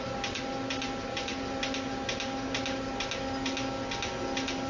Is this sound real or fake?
real